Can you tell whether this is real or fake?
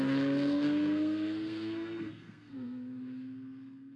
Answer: fake